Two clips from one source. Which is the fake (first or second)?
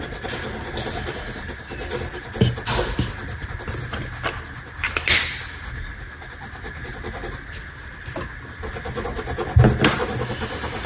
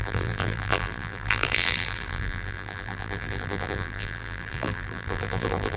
second